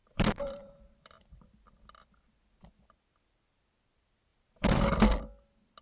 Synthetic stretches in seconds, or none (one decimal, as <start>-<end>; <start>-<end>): 0.0-1.4; 4.3-4.9